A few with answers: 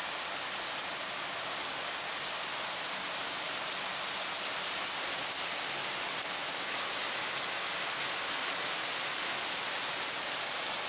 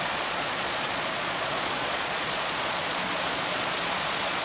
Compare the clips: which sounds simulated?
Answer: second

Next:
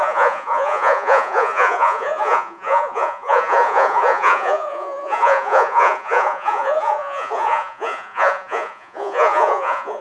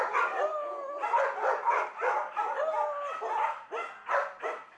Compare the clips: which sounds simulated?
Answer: first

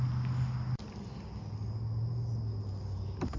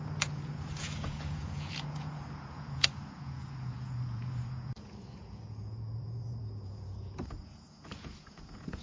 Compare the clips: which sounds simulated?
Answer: second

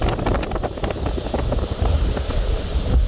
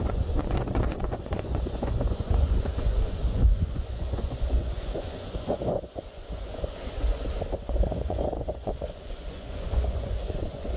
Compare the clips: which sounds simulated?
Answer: second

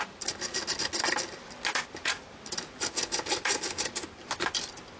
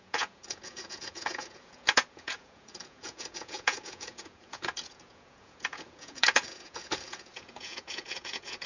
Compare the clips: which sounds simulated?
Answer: second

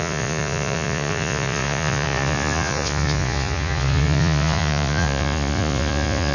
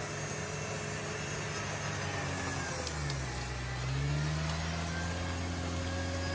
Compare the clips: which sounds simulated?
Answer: first